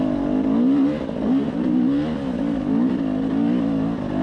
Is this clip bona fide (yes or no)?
yes